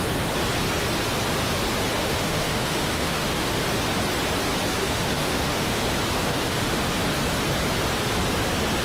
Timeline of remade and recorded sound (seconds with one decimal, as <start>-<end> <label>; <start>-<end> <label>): 0.0-2.0 recorded; 2.0-3.6 remade; 3.6-4.8 recorded; 4.8-5.8 remade; 5.8-6.2 recorded; 6.2-6.9 remade; 6.9-8.8 recorded